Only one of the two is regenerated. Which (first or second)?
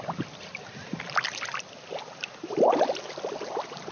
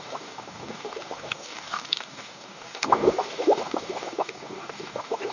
second